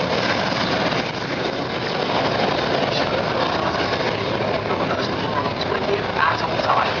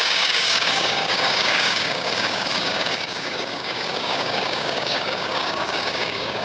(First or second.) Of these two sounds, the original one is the first